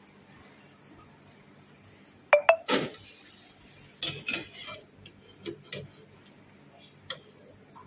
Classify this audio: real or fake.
real